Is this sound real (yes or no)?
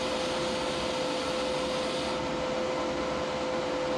yes